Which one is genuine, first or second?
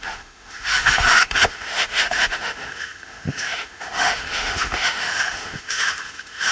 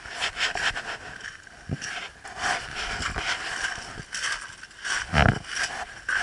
second